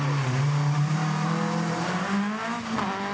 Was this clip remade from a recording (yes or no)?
no